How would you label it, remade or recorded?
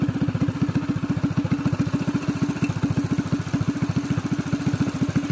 recorded